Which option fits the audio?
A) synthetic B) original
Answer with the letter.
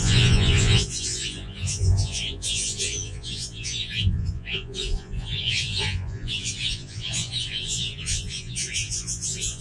A